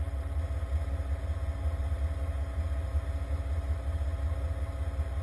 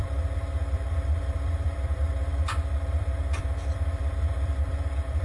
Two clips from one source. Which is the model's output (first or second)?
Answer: second